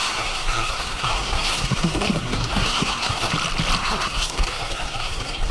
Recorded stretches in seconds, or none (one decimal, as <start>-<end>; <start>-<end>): 3.3-3.8